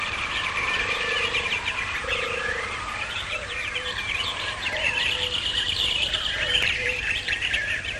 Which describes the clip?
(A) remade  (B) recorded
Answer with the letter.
A